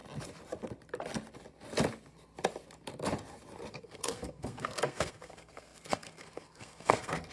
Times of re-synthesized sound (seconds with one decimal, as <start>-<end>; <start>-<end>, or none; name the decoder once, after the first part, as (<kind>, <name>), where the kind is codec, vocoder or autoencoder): 3.7-7.3 (codec, SNAC)